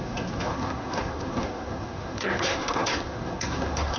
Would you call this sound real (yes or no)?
no